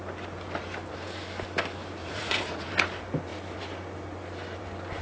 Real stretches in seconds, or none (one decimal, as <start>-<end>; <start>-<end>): 0.0-2.0; 2.7-5.0